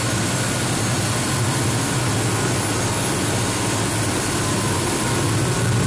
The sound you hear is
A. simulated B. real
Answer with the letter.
B